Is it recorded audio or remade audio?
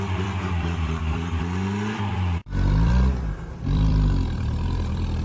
remade